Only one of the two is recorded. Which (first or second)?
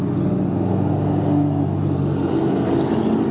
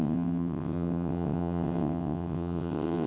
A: first